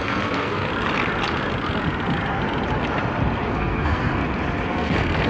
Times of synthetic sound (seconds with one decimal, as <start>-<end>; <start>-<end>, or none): 0.0-0.7; 3.5-4.2; 4.7-5.3